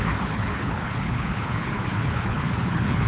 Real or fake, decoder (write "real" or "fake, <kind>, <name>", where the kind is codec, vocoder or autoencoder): fake, codec, HILCodec